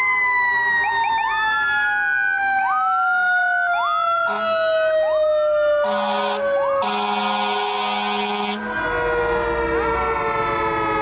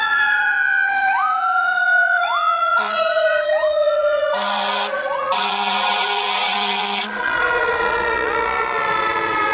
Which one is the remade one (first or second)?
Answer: second